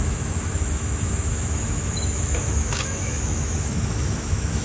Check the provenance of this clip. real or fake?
fake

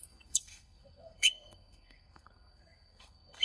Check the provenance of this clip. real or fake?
fake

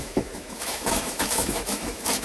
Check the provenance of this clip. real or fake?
fake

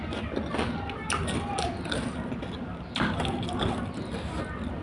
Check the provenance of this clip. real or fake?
real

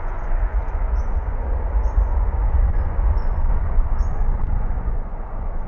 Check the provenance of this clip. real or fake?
fake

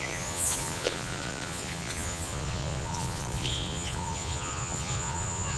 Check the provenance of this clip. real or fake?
fake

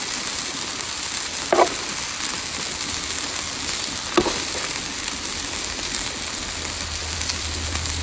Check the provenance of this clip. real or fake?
real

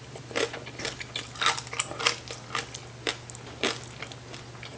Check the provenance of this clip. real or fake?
real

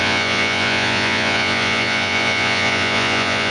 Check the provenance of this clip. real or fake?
fake